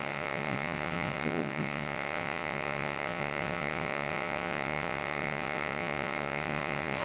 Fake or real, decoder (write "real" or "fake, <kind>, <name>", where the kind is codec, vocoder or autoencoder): fake, vocoder, WaveNeXt